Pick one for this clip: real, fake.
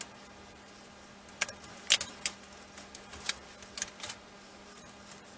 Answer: real